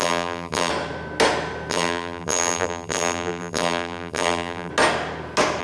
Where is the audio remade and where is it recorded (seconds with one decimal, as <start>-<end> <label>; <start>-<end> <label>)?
0.0-0.7 remade; 0.7-1.7 recorded; 1.7-4.7 remade; 4.7-5.6 recorded